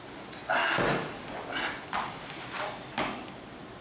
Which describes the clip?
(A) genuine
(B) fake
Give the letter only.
A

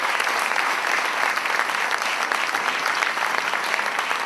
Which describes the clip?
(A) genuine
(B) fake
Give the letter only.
A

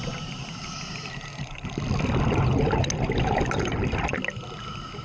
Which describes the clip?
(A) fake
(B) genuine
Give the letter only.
B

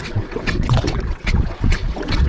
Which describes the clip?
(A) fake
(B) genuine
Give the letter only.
A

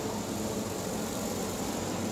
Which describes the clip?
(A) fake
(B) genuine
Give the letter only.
B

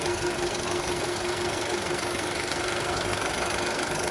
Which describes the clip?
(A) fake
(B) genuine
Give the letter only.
A